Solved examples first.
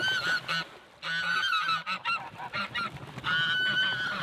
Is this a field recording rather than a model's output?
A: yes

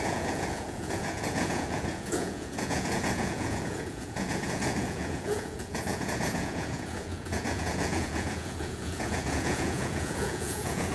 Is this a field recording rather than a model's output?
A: no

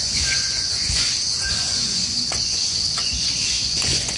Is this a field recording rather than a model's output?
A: no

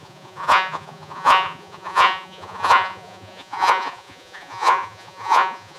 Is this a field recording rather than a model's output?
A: no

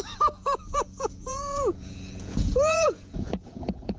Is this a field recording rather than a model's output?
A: no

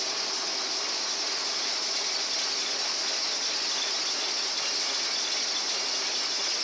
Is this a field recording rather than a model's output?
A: yes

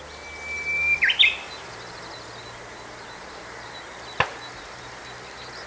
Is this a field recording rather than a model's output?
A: yes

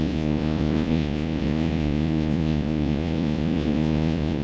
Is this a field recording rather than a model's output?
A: no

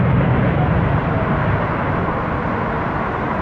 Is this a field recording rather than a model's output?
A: yes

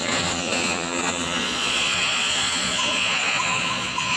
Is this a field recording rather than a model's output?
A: no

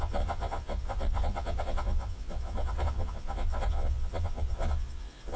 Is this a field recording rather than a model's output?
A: no